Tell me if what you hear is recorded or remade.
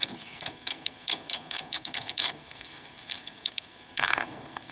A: remade